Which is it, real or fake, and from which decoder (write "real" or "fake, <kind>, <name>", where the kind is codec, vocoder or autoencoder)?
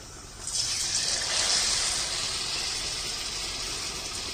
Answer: real